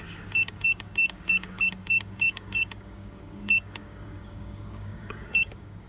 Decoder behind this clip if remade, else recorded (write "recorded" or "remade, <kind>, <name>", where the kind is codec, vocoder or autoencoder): remade, codec, DAC